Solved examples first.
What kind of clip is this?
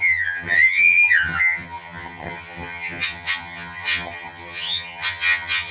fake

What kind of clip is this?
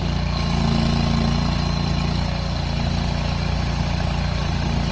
real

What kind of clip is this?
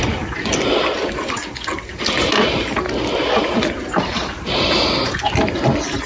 real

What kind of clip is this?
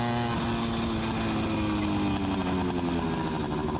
real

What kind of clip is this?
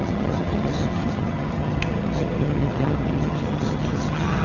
fake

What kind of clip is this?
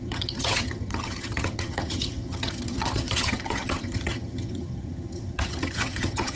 fake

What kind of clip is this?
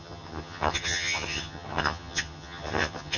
fake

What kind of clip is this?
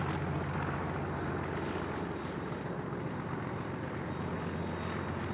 real